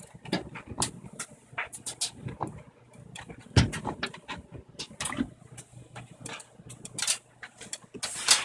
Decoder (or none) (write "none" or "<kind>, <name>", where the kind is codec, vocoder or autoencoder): none